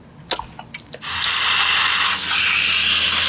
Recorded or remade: recorded